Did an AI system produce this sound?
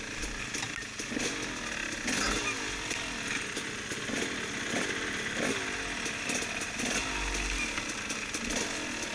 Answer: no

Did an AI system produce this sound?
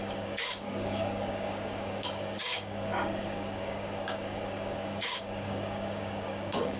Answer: yes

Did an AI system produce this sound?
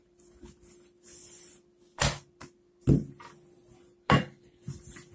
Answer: no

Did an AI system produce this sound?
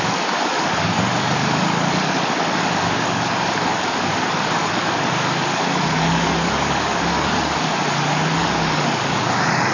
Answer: yes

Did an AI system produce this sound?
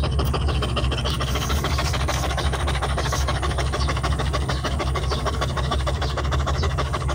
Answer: yes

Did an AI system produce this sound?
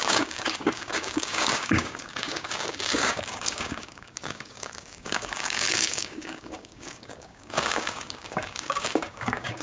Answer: yes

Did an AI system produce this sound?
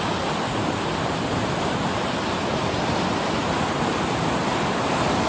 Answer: no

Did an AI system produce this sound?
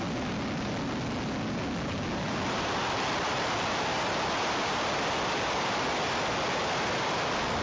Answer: no